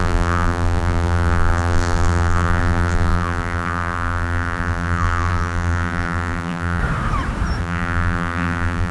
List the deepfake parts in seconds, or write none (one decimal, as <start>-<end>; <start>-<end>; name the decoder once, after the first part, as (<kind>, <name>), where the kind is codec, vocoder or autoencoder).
0.0-6.8 (vocoder, BigVGAN v2); 7.6-8.9